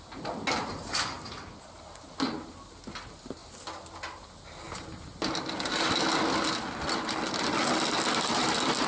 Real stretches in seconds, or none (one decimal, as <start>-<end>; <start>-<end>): 0.0-8.9